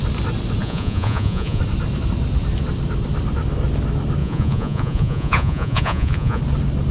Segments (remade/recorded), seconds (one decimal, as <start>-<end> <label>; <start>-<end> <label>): 0.0-0.6 recorded; 0.6-1.6 remade; 1.6-4.2 recorded; 4.2-6.4 remade; 6.4-6.9 recorded